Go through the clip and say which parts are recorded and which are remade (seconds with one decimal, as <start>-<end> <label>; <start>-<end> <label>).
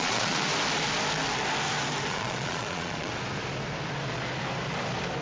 0.0-0.5 remade; 0.5-2.1 recorded; 2.1-3.1 remade; 3.1-5.2 recorded